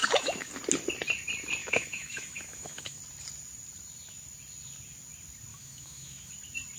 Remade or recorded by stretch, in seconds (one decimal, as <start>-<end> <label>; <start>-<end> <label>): 0.0-0.5 remade; 0.5-1.6 recorded; 1.6-3.0 remade; 3.0-5.5 recorded; 5.5-6.3 remade; 6.3-6.8 recorded